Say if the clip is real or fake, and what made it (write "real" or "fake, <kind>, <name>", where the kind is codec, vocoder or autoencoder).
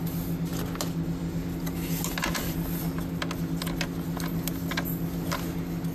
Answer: real